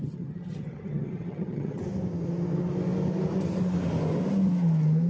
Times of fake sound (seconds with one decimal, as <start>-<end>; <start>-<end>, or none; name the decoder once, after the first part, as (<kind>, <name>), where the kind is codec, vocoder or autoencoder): 0.0-1.8 (vocoder, HiFi-GAN)